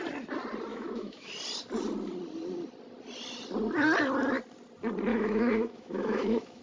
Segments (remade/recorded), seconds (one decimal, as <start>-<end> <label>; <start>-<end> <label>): 0.0-0.7 recorded; 0.7-1.3 remade; 1.3-5.1 recorded; 5.1-6.6 remade